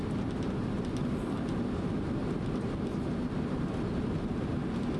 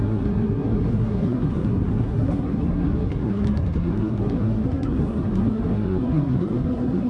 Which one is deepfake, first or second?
second